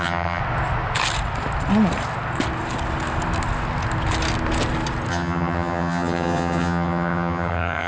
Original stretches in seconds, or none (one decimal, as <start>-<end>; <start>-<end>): 0.4-5.1